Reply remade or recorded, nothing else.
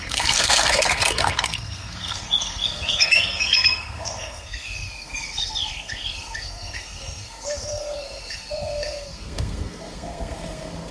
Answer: remade